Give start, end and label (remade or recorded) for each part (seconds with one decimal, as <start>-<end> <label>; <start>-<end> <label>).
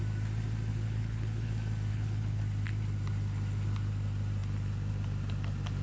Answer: 0.0-0.7 recorded; 0.7-1.5 remade; 1.5-1.9 recorded; 1.9-2.4 remade; 2.4-5.8 recorded